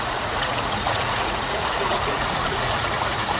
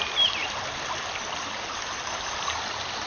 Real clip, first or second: second